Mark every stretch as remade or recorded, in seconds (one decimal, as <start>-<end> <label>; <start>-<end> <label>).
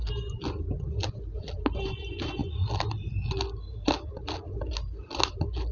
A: 0.0-5.7 recorded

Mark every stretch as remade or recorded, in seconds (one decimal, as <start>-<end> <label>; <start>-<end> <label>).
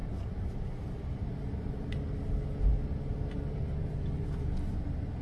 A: 0.0-5.2 recorded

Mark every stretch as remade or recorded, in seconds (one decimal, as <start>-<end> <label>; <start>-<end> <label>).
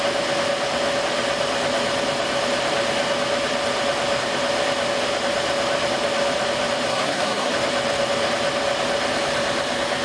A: 0.0-6.9 recorded; 6.9-7.5 remade; 7.5-10.0 recorded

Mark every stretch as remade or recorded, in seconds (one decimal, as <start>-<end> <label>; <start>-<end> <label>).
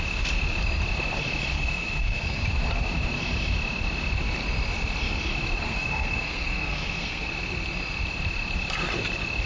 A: 0.0-1.5 recorded; 1.5-2.4 remade; 2.4-5.6 recorded; 5.6-7.3 remade; 7.3-9.5 recorded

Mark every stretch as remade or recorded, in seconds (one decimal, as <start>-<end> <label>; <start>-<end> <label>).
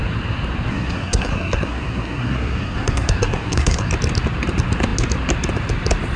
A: 0.0-0.7 recorded; 0.7-3.9 remade; 3.9-6.2 recorded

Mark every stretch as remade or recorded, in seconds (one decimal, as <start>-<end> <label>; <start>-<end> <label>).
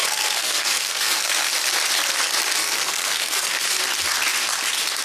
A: 0.0-1.5 remade; 1.5-2.6 recorded; 2.6-3.6 remade; 3.6-5.0 recorded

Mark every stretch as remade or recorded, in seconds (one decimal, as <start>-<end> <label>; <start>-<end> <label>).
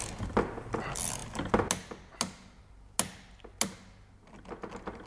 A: 0.0-5.1 recorded